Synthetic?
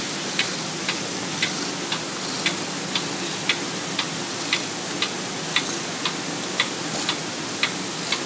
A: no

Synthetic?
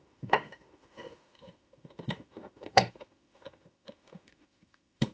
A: yes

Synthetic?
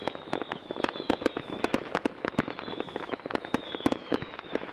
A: yes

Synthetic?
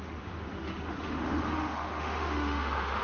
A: yes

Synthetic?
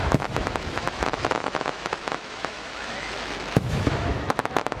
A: yes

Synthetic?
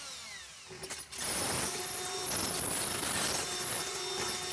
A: no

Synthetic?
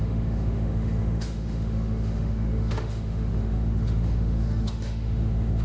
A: yes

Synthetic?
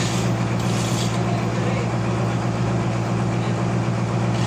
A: no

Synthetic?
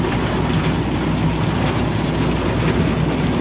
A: no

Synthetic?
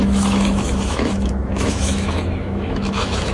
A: yes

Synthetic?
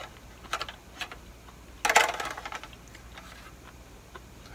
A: no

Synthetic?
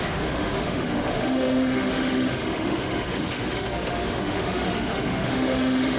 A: yes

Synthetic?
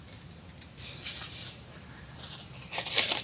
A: no